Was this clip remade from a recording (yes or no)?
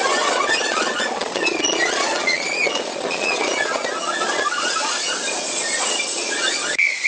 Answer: yes